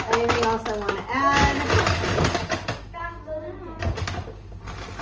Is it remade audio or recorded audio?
recorded